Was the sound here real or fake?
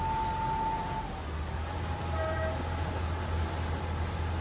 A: real